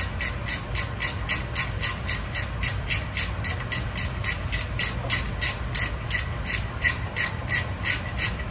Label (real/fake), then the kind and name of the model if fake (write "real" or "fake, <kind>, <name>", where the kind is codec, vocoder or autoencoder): real